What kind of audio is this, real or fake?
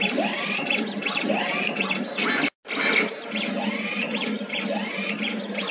real